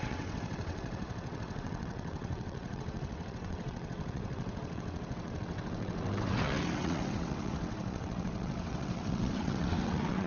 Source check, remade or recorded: remade